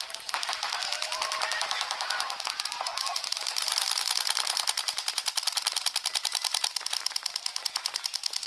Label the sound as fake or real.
fake